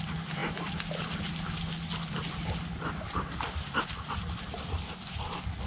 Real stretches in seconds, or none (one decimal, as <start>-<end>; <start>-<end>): 0.0-5.7